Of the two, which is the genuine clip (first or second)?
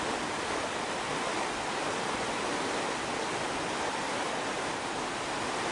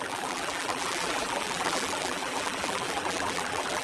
first